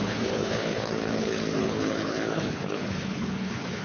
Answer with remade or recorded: remade